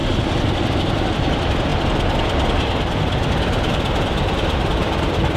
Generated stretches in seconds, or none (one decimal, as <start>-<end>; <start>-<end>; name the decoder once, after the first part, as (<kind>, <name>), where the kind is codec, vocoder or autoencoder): 0.7-5.4 (vocoder, BigVGAN v2)